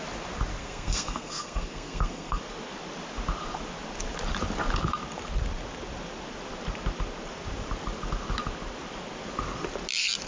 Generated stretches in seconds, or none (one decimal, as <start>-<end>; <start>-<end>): 0.6-2.4